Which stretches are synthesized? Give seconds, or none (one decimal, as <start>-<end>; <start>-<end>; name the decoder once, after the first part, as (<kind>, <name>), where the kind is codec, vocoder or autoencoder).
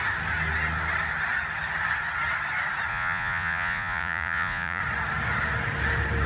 2.9-4.8 (vocoder, Vocos)